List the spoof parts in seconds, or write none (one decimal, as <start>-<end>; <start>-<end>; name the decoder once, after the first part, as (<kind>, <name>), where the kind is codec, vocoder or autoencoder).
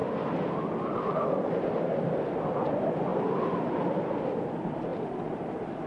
none